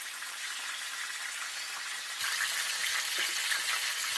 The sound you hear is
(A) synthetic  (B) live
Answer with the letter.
B